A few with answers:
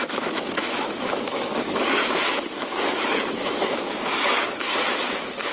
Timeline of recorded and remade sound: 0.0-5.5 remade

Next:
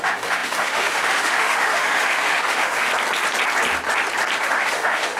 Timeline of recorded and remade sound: 0.0-2.9 remade; 2.9-4.4 recorded; 4.4-5.2 remade

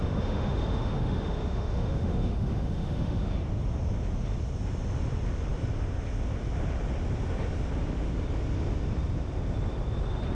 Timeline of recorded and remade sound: 0.0-3.3 remade; 3.3-10.3 recorded

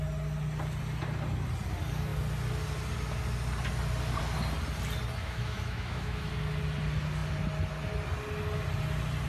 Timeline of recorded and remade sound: 0.0-5.2 recorded; 5.2-6.3 remade; 6.3-9.3 recorded

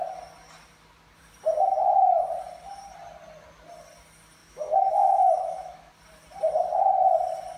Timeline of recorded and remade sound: 0.0-4.4 recorded; 4.4-5.9 remade; 5.9-7.6 recorded